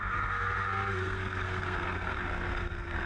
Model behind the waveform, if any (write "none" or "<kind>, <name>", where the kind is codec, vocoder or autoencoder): codec, SNAC